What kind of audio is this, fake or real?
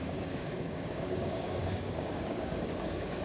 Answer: fake